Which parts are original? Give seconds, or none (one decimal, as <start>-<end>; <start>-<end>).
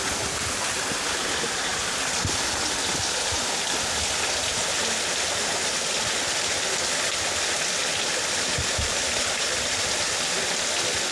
0.0-11.1